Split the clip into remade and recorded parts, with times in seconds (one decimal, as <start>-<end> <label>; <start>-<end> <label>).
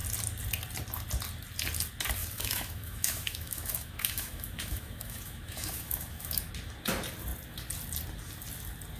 0.0-2.2 recorded; 2.2-6.5 remade; 6.5-9.0 recorded